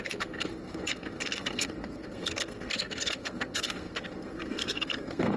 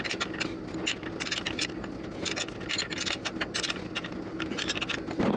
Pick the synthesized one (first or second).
first